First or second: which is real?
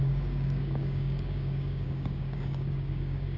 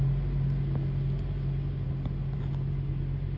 second